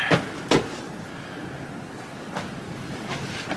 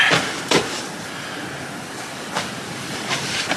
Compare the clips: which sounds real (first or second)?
first